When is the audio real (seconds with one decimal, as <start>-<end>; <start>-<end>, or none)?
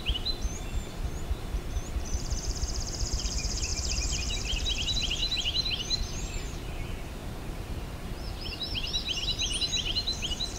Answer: 5.2-6.4